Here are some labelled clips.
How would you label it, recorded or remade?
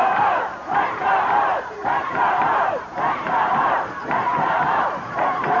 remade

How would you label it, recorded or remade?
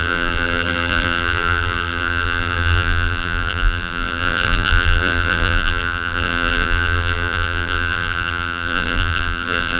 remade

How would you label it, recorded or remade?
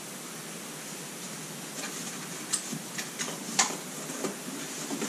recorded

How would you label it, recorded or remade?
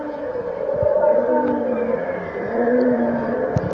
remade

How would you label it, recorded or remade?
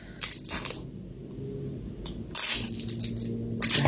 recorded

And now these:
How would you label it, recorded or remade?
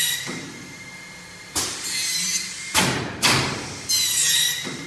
remade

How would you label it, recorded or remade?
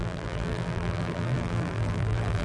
remade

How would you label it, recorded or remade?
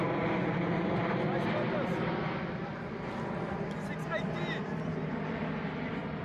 recorded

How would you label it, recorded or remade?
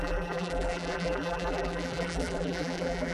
remade